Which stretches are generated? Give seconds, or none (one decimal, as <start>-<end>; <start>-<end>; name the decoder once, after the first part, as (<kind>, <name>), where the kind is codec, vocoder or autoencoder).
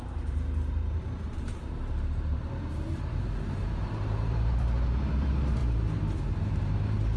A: 0.0-5.6 (vocoder, BigVGAN v2); 6.4-7.2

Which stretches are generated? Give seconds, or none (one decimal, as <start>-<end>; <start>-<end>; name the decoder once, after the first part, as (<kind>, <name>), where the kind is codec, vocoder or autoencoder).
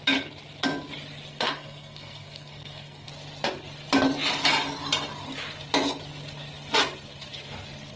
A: 1.3-3.1 (codec, SNAC)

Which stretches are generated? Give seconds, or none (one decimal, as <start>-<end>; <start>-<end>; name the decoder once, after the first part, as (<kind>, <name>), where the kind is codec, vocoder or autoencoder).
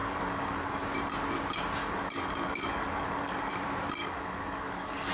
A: 0.0-0.8 (codec, DAC); 1.8-3.5; 4.0-5.1